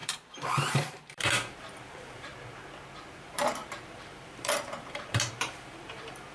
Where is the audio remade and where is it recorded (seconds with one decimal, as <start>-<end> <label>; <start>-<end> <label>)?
0.0-2.3 remade; 2.3-3.1 recorded; 3.1-6.3 remade